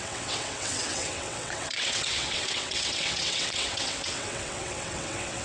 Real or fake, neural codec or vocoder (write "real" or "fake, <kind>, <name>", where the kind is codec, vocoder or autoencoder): fake, vocoder, WaveNeXt